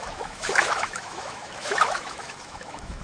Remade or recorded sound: remade